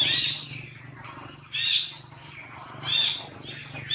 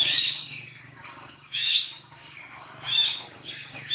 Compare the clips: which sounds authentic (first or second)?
first